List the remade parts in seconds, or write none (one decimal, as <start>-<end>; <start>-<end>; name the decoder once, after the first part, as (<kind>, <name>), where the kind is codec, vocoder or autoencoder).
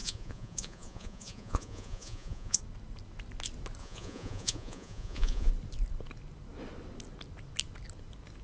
0.0-2.6 (vocoder, Vocos); 3.8-5.5